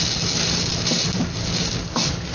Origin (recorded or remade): recorded